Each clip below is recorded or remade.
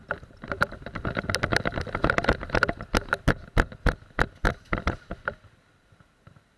remade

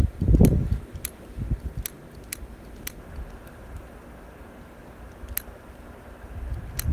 recorded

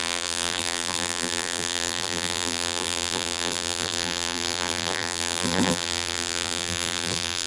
remade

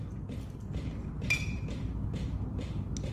recorded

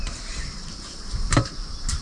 remade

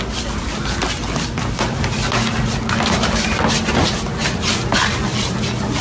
recorded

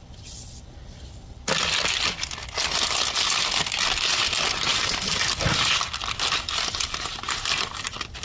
recorded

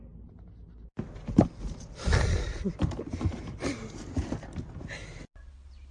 recorded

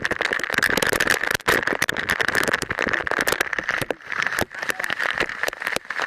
remade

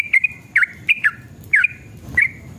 remade